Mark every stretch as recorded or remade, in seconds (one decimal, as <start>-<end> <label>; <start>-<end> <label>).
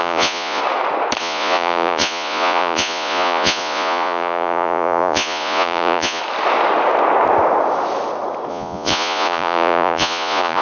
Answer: 0.0-0.6 remade; 0.6-1.2 recorded; 1.2-6.2 remade; 6.2-8.5 recorded; 8.5-10.6 remade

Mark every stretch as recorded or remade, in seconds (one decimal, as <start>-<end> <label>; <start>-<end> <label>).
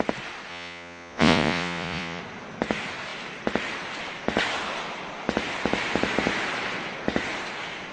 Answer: 0.0-0.5 recorded; 0.5-2.2 remade; 2.2-7.9 recorded